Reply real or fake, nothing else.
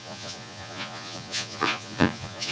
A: fake